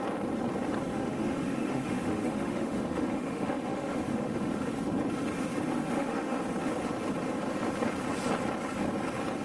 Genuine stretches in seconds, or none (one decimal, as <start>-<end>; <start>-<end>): 0.0-0.9; 4.7-5.8; 6.4-9.4